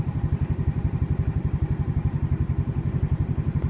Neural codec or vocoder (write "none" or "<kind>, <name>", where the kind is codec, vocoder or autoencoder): vocoder, BigVGAN v2